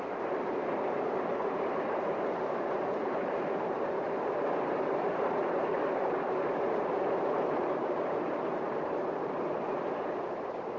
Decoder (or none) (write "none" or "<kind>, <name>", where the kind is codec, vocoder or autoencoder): vocoder, BigVGAN v2